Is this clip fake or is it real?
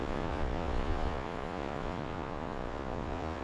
fake